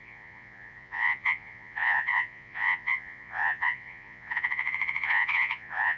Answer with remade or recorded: remade